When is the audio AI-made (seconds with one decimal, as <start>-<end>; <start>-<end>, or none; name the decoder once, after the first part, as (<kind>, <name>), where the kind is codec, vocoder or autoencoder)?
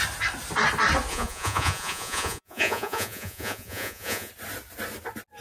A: 1.1-4.3 (vocoder, Vocos)